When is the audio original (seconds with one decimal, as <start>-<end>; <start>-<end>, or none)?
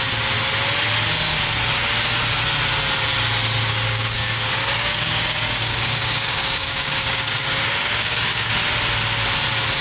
0.0-3.7; 8.5-9.8